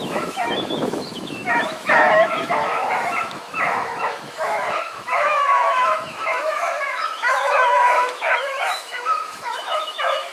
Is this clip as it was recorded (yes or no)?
no